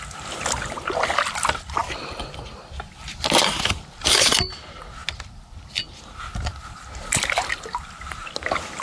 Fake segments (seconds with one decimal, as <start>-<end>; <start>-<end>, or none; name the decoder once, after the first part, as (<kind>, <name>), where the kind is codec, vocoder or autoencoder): none